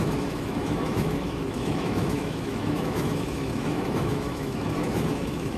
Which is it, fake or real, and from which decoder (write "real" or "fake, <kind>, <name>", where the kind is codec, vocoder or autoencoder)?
fake, autoencoder, DAC-VAE